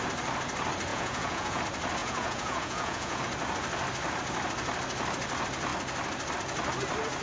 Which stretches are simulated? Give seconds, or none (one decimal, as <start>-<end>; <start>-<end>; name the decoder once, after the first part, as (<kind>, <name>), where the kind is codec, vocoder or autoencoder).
0.9-1.6 (vocoder, Vocos); 2.0-3.2